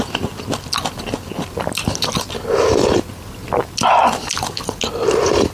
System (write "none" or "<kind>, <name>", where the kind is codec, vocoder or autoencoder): none